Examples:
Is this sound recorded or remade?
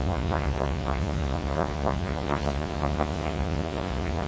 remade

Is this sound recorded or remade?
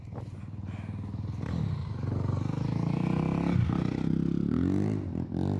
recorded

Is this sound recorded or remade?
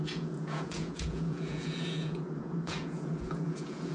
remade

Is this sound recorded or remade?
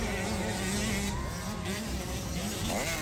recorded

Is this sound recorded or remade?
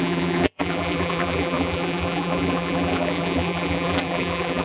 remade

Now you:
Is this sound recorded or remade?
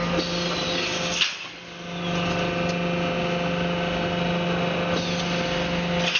recorded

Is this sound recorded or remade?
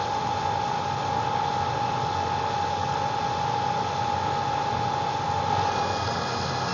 recorded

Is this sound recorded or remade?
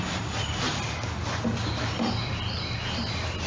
recorded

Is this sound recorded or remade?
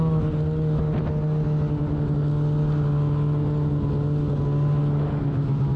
recorded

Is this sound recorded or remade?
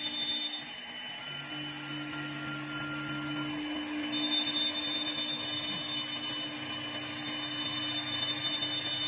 recorded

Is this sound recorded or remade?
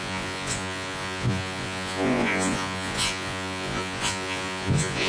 remade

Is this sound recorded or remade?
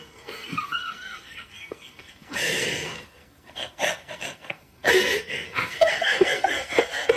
remade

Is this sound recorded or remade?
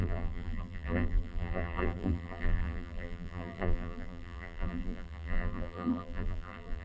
remade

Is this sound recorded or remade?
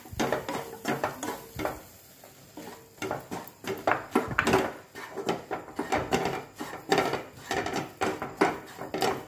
recorded